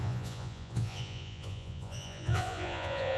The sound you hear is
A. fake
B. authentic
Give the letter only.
A